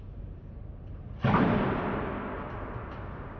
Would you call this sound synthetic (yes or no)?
no